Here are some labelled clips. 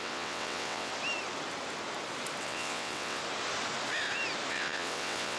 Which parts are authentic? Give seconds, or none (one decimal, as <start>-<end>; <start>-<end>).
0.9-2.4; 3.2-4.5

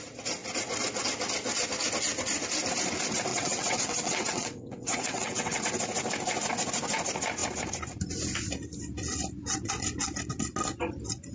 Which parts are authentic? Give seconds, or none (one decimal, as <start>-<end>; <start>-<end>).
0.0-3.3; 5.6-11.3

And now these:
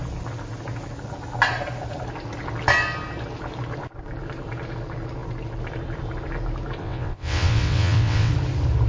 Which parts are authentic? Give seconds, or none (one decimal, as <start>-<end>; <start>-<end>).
0.0-6.8; 8.3-8.9